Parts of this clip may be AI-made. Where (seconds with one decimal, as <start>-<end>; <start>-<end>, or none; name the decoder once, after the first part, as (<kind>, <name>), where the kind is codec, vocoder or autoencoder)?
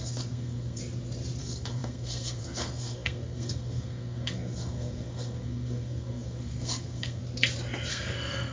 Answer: 0.0-0.8 (codec, SNAC); 1.4-7.2; 7.9-8.5